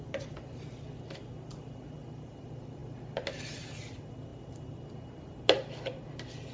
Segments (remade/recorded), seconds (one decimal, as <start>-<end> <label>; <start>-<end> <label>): 0.0-6.5 recorded